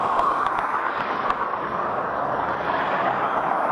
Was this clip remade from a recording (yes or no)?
yes